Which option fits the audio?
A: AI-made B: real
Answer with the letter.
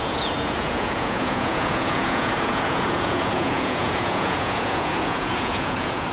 A